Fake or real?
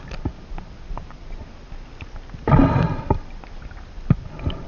real